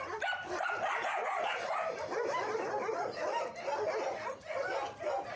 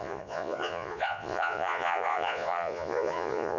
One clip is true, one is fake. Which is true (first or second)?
first